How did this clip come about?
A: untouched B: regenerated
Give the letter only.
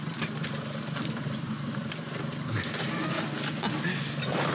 A